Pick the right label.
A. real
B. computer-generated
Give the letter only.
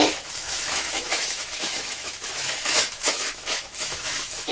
B